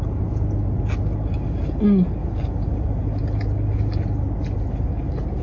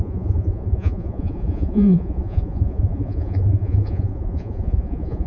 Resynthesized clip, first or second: second